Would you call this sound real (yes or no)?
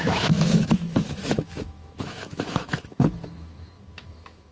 no